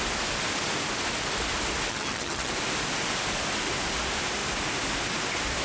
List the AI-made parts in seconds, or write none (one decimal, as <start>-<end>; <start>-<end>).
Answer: 1.9-2.5